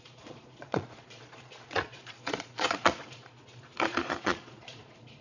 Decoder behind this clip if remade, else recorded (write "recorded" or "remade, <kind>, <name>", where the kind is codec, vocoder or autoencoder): remade, vocoder, Vocos